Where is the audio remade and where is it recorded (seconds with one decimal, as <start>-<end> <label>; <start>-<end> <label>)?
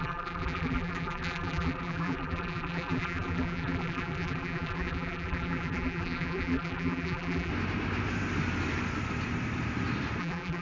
0.0-7.5 remade; 7.5-10.2 recorded; 10.2-10.6 remade